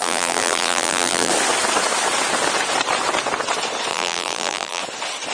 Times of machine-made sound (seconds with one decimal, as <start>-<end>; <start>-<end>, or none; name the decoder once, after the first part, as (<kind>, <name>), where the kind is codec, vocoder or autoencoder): 0.0-1.3 (vocoder, BigVGAN v2); 3.9-4.8